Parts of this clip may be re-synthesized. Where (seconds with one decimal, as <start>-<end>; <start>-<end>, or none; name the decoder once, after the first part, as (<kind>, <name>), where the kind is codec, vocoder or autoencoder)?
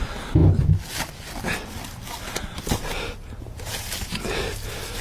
none